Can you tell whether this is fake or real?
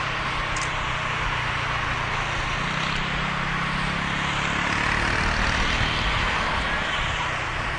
real